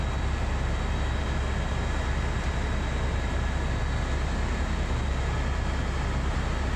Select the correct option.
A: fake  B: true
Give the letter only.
B